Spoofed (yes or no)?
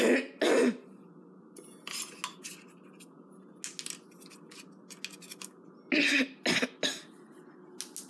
no